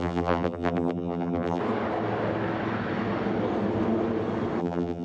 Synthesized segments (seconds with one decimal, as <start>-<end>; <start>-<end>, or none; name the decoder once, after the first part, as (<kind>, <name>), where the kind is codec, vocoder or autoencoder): 0.0-1.6 (vocoder, BigVGAN v2); 4.6-5.0